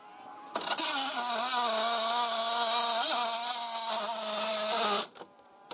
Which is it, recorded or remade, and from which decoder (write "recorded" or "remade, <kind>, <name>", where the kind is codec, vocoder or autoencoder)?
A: recorded